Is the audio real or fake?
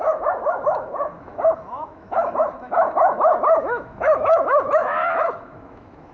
fake